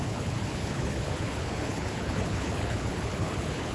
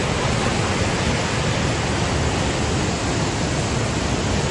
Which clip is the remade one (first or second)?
first